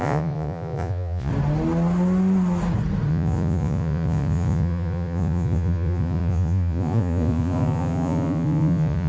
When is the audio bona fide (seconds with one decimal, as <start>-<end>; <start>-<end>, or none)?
1.3-3.1